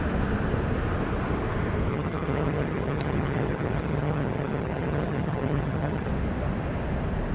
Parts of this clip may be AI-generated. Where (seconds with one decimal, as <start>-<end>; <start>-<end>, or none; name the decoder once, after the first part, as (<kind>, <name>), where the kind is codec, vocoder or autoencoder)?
1.9-6.1 (vocoder, HiFi-GAN)